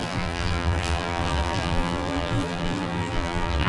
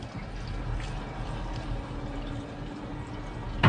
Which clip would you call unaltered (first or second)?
second